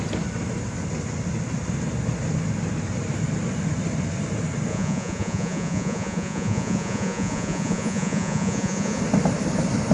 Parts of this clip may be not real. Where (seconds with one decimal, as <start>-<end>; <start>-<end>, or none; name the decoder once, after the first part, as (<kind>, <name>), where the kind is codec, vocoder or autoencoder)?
4.7-9.0 (vocoder, Vocos)